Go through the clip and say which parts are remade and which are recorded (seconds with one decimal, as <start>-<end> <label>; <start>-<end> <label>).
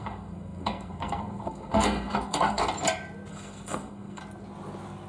0.0-2.6 remade; 2.6-3.3 recorded; 3.3-4.2 remade; 4.2-5.1 recorded